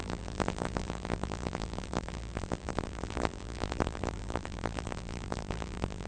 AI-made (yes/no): yes